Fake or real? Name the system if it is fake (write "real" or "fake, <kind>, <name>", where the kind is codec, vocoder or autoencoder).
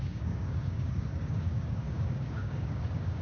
fake, codec, DAC